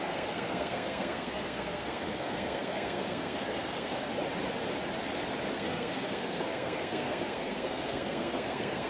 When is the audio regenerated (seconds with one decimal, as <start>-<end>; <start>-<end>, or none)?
0.0-4.1; 5.5-8.9